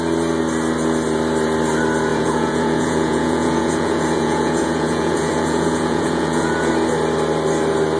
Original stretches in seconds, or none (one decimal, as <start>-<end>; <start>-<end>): 0.0-2.1; 6.7-8.0